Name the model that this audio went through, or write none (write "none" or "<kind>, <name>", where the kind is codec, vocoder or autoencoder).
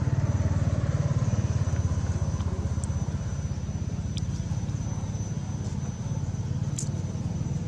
none